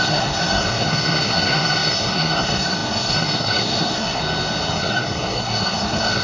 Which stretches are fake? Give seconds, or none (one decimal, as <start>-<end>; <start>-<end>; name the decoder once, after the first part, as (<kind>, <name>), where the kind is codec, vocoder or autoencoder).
0.0-4.2 (codec, SNAC); 4.8-6.2